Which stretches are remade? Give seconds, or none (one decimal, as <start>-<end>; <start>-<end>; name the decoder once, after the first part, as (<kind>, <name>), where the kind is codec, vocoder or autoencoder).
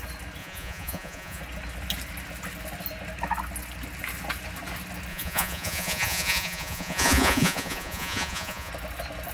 0.4-1.4 (vocoder, Vocos); 5.1-8.7